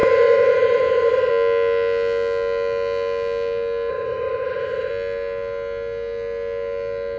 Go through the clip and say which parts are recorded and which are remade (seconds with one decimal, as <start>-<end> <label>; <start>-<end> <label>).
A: 0.0-1.3 remade; 1.3-3.9 recorded; 3.9-4.9 remade; 4.9-7.2 recorded